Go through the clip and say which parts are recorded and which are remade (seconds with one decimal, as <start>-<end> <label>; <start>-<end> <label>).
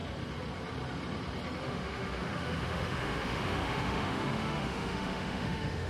0.0-1.6 recorded; 1.6-5.9 remade